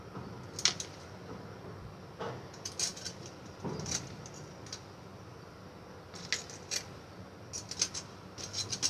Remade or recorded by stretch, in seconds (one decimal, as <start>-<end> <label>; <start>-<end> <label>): 0.0-8.9 recorded